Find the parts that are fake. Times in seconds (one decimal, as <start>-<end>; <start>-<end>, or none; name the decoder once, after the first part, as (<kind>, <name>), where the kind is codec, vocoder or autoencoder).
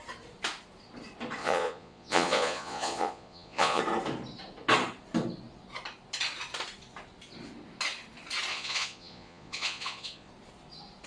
1.4-3.8 (vocoder, Vocos); 8.5-10.3